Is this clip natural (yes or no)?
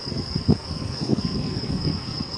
no